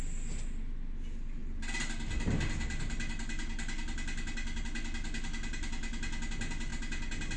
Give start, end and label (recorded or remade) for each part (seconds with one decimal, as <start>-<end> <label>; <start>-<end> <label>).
0.0-7.4 recorded